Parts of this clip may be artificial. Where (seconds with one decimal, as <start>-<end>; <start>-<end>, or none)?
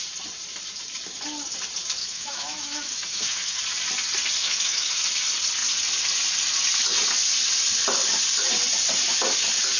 2.0-3.6; 4.4-5.0